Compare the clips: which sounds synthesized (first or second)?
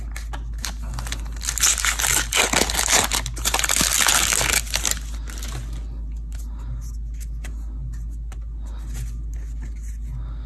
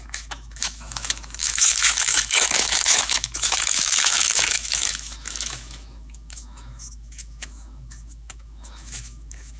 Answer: second